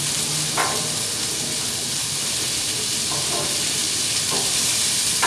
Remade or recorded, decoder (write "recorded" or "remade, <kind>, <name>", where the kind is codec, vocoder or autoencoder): recorded